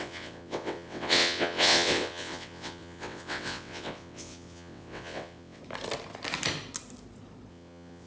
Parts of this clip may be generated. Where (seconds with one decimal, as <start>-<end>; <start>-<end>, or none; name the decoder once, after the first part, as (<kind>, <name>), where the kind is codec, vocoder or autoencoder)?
0.0-5.6 (vocoder, WaveNeXt); 7.5-8.1